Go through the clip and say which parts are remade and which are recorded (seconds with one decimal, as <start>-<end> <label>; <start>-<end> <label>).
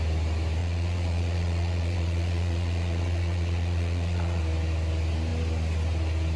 0.0-0.6 recorded; 0.6-4.4 remade; 4.4-6.4 recorded